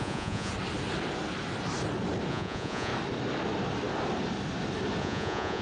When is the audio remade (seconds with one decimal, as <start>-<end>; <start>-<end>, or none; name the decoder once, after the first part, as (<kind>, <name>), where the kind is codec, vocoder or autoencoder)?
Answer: 0.0-0.5 (vocoder, Vocos); 2.3-2.9; 5.0-5.6